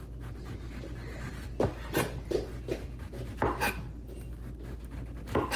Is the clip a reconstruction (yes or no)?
no